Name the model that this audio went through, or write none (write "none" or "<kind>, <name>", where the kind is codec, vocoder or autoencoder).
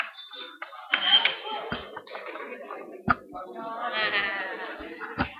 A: none